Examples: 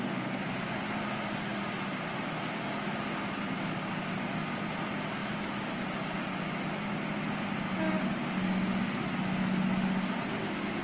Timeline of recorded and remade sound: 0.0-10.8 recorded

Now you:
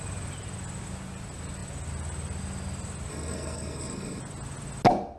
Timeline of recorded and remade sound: 0.0-3.1 recorded; 3.1-4.2 remade; 4.2-5.2 recorded

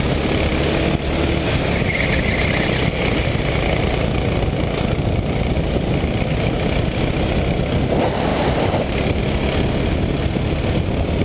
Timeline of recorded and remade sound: 0.0-11.2 recorded

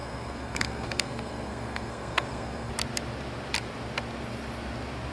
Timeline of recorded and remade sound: 0.0-2.7 remade; 2.7-5.1 recorded